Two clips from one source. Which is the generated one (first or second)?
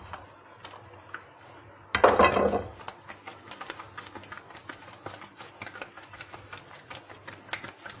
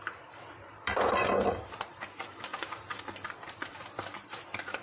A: second